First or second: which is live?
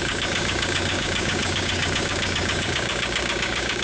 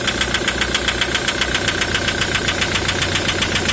second